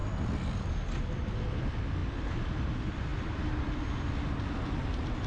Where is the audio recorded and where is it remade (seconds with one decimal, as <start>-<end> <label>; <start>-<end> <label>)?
0.0-0.7 remade; 0.7-3.1 recorded; 3.1-4.1 remade; 4.1-5.3 recorded